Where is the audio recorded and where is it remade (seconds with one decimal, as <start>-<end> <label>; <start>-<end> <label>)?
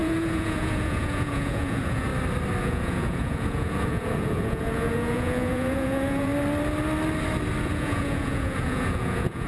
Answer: 0.0-2.1 remade; 2.1-2.6 recorded; 2.6-6.3 remade; 6.3-7.6 recorded; 7.6-9.5 remade